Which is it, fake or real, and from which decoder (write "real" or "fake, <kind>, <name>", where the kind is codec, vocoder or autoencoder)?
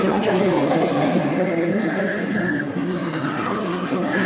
fake, codec, SNAC